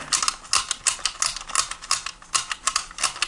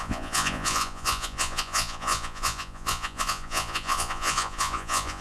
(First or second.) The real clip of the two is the first